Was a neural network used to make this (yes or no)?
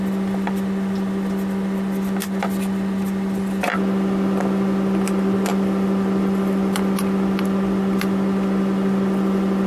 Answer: no